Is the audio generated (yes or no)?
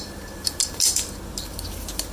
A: no